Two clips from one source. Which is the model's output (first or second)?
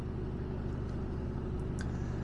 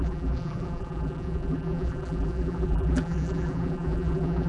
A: second